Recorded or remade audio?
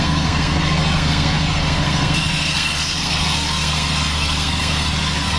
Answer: remade